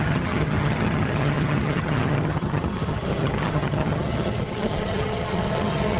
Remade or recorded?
remade